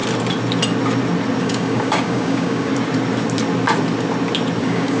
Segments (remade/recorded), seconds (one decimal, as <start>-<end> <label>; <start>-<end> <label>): 0.0-1.4 recorded; 1.4-2.7 remade; 2.7-4.6 recorded; 4.6-5.0 remade